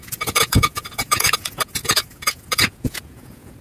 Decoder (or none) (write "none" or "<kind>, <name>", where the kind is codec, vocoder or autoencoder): vocoder, Vocos